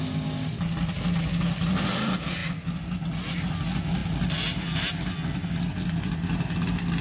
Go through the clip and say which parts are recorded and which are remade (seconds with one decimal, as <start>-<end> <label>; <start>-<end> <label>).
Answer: 0.0-7.0 recorded